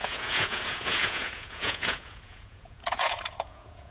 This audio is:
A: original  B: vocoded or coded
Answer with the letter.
B